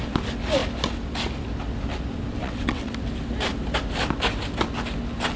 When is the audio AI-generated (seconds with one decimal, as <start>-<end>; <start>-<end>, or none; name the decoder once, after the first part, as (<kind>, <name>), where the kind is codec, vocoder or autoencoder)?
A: 2.4-2.9 (vocoder, WaveNeXt)